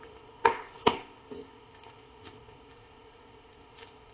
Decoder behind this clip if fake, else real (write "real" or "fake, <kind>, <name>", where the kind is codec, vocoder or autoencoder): fake, codec, ZipCodec